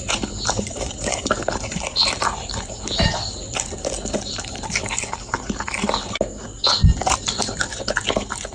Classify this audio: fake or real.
real